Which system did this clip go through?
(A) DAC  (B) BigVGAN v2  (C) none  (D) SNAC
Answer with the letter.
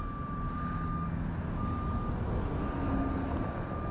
C